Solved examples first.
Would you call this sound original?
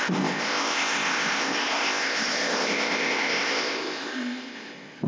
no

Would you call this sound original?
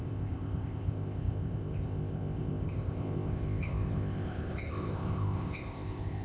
no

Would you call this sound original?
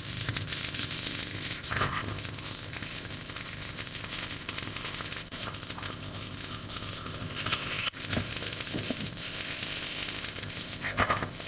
no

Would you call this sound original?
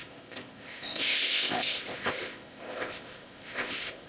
no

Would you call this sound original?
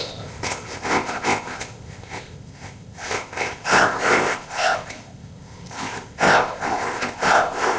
no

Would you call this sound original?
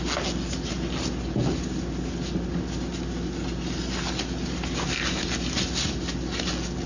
yes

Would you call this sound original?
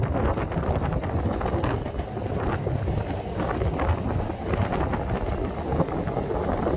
yes